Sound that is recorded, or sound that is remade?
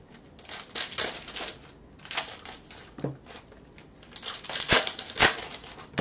recorded